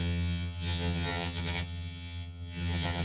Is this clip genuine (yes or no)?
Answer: no